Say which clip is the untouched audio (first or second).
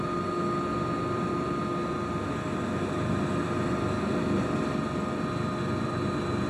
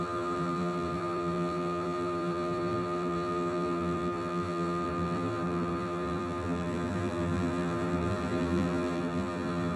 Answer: first